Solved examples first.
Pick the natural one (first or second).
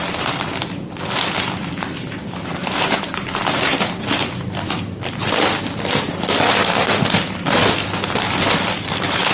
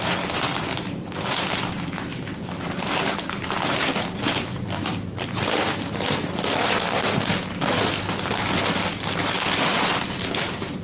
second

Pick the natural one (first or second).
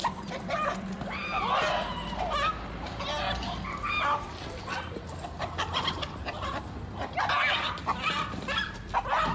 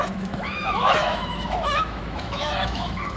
first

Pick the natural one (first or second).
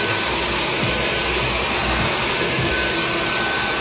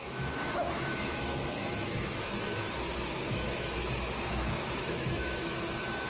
first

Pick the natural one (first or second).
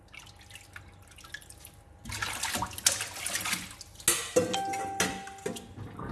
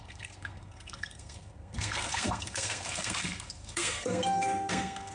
first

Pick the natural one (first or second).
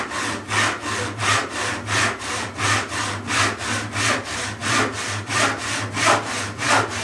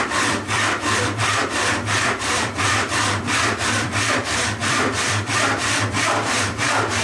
first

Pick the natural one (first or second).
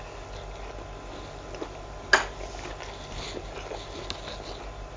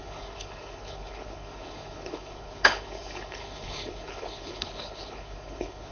first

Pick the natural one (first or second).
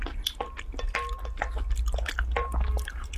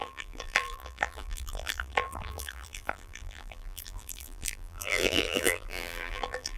first